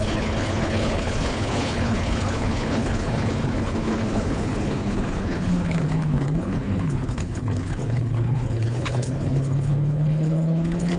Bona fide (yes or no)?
no